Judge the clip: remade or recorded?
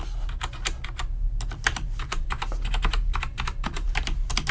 recorded